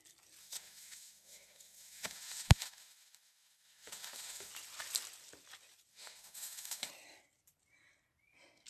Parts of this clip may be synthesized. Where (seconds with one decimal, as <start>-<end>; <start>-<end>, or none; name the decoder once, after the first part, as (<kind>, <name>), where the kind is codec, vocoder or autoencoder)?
0.4-4.5 (autoencoder, DAC-VAE); 5.9-6.9